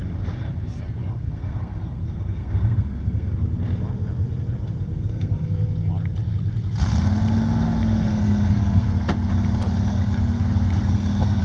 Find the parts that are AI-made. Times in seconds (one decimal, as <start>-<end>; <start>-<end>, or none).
1.0-3.3; 4.9-5.7; 8.1-9.3; 9.9-11.4

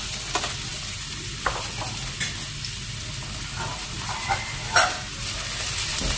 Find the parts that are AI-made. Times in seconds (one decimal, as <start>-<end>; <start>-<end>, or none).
none

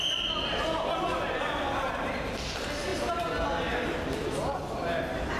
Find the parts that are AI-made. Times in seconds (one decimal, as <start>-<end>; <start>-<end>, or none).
none

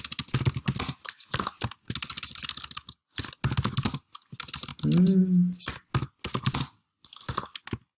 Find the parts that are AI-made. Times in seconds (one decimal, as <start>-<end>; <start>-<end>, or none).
none

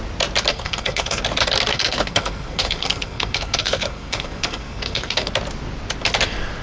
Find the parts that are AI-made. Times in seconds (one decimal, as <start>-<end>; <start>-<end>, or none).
0.5-1.2; 1.7-5.3

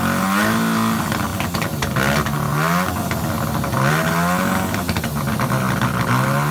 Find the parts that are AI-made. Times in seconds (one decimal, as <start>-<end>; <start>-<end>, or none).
none

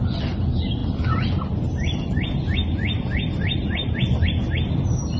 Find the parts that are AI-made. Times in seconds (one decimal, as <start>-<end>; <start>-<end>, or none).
none

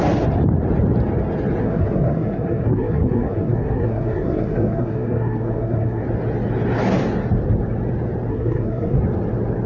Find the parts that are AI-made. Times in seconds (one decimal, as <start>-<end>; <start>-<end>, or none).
1.6-6.0; 8.3-9.0